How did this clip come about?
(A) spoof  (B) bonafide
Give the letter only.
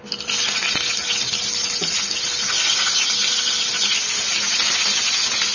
B